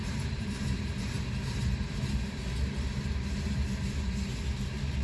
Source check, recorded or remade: remade